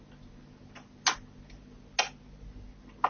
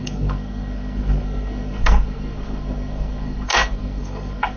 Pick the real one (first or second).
first